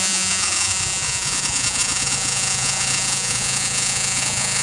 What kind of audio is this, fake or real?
fake